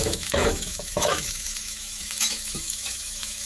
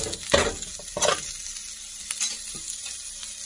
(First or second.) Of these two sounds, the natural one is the second